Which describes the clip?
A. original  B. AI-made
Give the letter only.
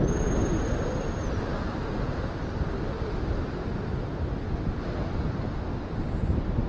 A